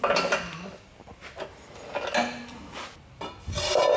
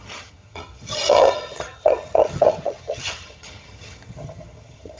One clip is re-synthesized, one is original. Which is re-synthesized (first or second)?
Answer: second